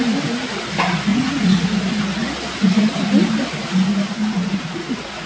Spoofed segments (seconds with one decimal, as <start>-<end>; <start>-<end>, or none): 1.1-1.8; 4.2-5.3